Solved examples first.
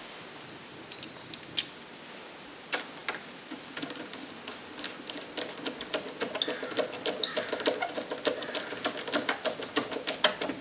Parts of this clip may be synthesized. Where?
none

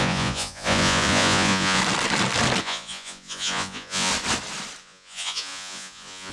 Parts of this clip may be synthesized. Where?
0.0-1.8; 2.6-4.1; 4.8-6.3

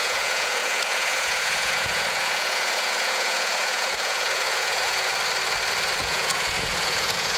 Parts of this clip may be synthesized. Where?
0.0-5.1; 6.0-7.4

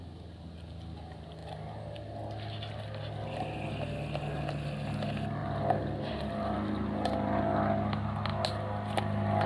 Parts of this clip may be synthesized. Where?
none

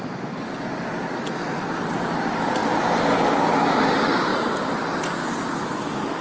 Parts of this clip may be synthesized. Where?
none

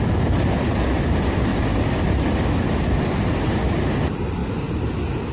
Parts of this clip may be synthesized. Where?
none

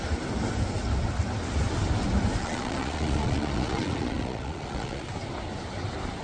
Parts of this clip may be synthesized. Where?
2.4-5.1